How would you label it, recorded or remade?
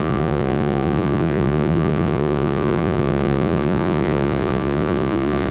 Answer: remade